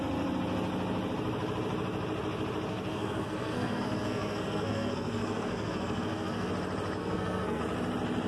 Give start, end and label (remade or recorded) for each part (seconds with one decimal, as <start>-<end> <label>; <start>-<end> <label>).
0.0-2.7 recorded; 2.7-6.5 remade; 6.5-7.0 recorded; 7.0-7.6 remade; 7.6-8.3 recorded